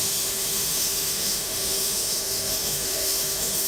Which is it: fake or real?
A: fake